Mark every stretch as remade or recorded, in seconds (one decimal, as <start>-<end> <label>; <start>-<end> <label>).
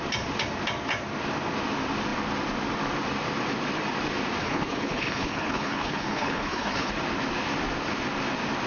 0.0-4.4 recorded; 4.4-6.9 remade; 6.9-8.7 recorded